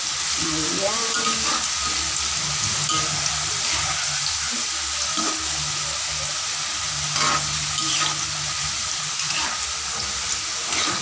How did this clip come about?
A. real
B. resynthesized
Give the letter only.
A